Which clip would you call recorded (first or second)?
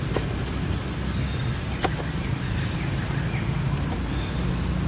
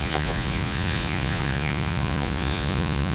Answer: first